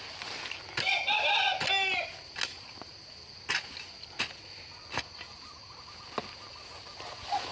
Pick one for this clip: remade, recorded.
recorded